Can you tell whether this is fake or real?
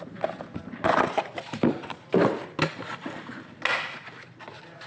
real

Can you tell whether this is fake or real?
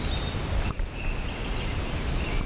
fake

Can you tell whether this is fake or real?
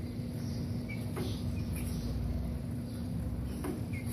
fake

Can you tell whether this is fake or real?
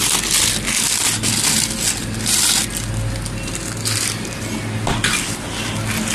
real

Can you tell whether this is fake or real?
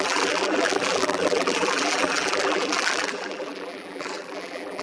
fake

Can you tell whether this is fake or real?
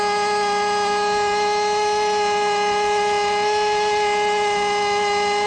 real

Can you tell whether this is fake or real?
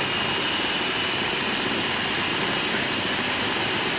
real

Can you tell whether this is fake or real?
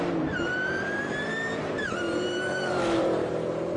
fake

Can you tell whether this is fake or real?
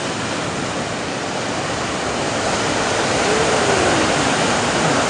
fake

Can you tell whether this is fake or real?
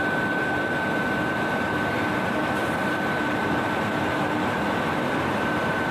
fake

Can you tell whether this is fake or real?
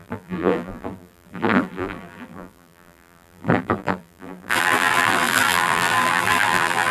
fake